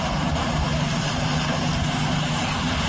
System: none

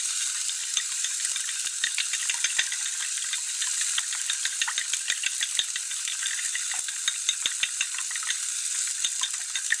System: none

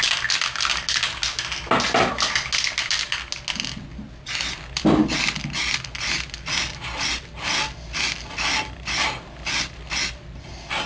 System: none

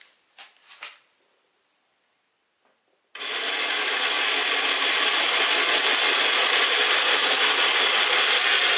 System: none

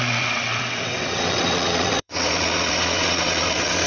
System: vocoder, WaveNeXt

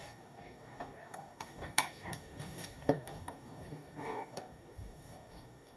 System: codec, DAC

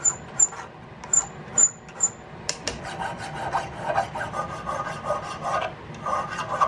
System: none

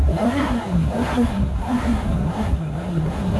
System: codec, SNAC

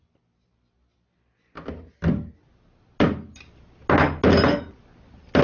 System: none